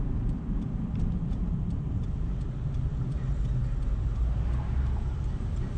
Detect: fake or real fake